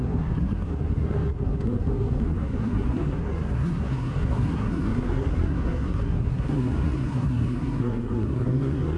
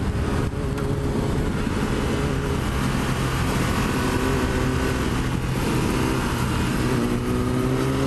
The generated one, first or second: first